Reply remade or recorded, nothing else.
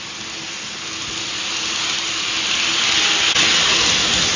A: recorded